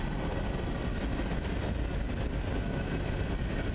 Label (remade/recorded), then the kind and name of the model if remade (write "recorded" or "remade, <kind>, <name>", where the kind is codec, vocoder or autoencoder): recorded